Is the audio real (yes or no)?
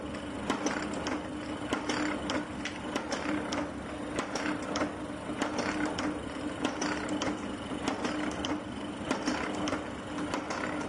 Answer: yes